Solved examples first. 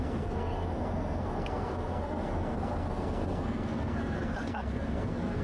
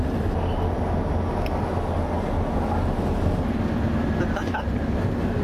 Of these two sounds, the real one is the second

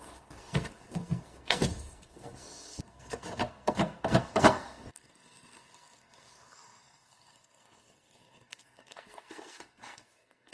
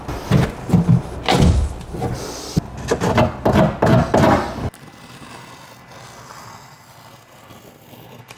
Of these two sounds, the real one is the second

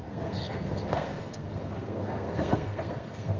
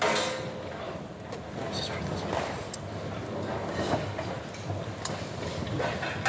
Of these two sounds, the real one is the second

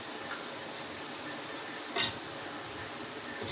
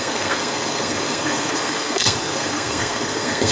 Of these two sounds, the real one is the first